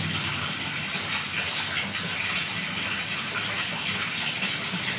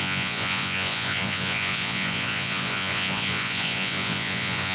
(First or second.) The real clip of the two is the first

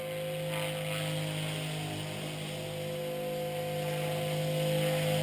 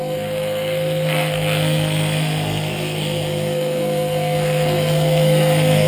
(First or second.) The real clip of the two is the first